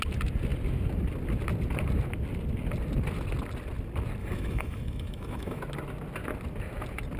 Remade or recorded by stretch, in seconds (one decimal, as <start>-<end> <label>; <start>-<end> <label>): 0.0-4.2 recorded; 4.2-5.6 remade; 5.6-7.2 recorded